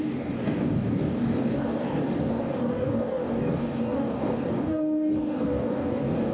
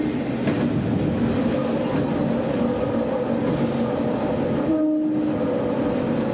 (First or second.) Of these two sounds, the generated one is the first